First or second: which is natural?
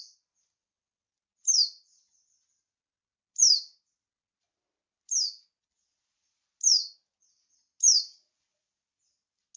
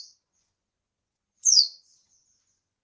first